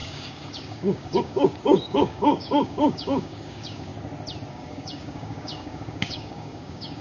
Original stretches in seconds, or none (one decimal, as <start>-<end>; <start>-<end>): 3.9-4.5